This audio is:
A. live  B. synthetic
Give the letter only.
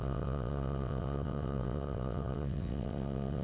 B